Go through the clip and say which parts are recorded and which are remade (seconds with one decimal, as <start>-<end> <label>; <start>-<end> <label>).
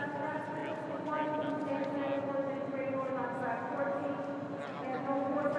0.0-5.6 recorded